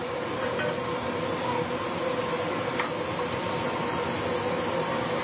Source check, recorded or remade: recorded